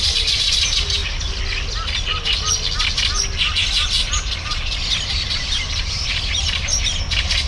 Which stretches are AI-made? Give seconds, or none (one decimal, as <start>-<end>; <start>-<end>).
0.0-1.0; 5.1-7.5